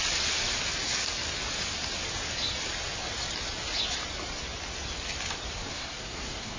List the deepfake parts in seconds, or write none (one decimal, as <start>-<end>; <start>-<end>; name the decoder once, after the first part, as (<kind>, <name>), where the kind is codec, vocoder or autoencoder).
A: 5.7-6.6 (codec, SNAC)